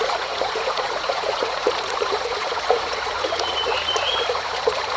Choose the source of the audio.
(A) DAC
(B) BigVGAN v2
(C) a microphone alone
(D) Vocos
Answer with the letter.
D